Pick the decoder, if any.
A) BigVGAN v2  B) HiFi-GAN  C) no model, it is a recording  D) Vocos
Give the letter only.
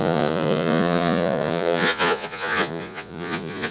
D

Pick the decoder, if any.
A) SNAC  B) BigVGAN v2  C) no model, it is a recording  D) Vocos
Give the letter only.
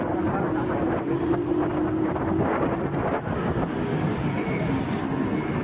C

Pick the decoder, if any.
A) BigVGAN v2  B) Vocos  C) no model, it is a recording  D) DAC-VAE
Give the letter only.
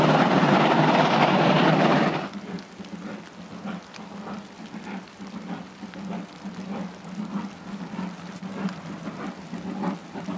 C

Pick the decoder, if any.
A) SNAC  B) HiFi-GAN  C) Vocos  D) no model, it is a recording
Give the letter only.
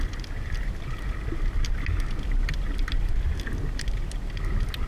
D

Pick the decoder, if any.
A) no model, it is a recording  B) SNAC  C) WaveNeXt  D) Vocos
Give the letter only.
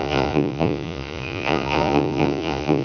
D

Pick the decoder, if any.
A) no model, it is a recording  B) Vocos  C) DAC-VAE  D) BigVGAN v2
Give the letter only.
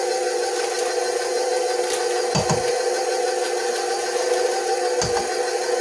A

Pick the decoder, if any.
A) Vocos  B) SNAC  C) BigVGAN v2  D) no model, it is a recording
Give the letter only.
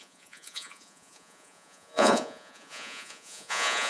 A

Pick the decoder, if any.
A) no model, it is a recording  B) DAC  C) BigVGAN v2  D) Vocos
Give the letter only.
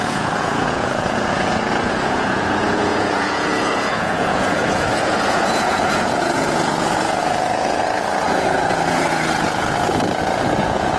D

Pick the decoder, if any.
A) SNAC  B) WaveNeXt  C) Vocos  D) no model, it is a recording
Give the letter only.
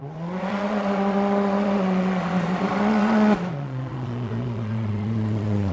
C